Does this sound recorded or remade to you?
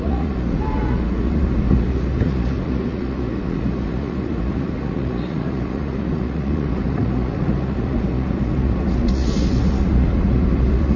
remade